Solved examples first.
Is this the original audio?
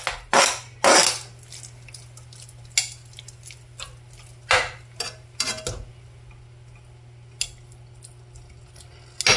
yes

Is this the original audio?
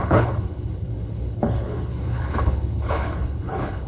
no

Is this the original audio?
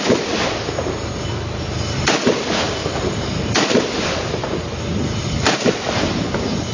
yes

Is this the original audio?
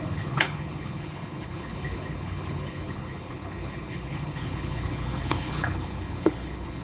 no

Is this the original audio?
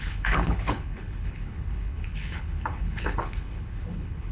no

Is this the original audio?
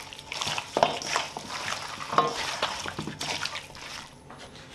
yes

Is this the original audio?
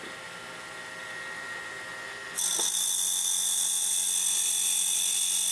yes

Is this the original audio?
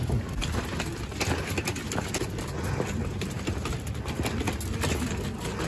yes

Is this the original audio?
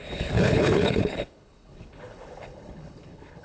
no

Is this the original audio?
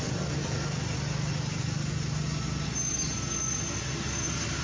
yes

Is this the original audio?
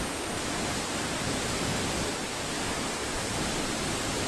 yes